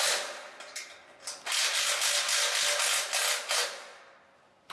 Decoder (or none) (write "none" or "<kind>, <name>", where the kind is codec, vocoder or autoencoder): none